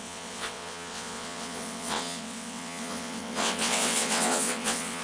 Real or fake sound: fake